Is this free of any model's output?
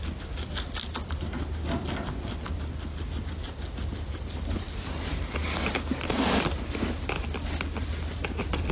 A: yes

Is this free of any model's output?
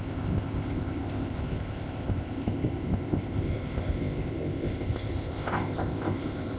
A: no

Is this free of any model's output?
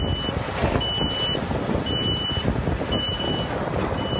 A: yes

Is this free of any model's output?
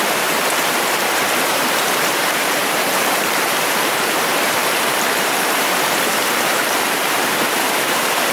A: no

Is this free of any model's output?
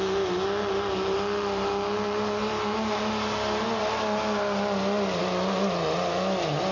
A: yes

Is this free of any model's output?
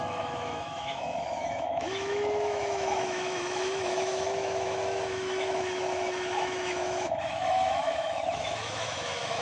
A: no